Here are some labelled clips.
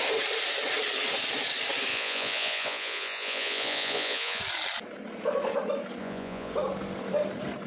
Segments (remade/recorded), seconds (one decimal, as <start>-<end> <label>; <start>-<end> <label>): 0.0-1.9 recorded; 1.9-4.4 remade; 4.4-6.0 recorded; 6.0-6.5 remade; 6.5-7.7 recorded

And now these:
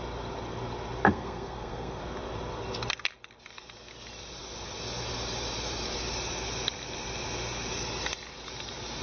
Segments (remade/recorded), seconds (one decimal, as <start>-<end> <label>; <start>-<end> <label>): 0.0-1.1 recorded; 1.1-2.0 remade; 2.0-9.0 recorded

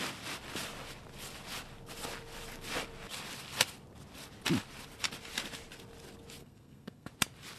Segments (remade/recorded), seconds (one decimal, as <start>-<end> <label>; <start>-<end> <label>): 0.0-6.4 recorded; 6.4-7.1 remade; 7.1-7.6 recorded

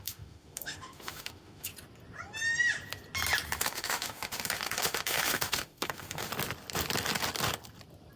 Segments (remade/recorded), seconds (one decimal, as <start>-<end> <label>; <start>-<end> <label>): 0.0-1.7 remade; 1.7-3.6 recorded; 3.6-6.3 remade; 6.3-8.2 recorded

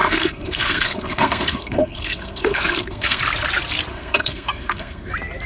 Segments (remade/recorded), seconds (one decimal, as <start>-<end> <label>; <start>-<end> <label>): 0.0-3.2 remade; 3.2-3.9 recorded; 3.9-5.1 remade; 5.1-5.5 recorded

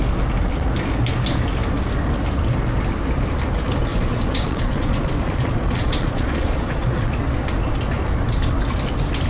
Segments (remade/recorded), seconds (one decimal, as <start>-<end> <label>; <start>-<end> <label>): 0.0-3.9 recorded; 3.9-7.2 remade; 7.2-9.3 recorded

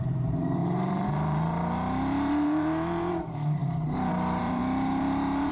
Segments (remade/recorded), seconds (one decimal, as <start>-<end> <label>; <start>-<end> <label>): 0.0-3.6 remade; 3.6-4.1 recorded; 4.1-5.5 remade